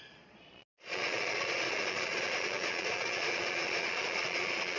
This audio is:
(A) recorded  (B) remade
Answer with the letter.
B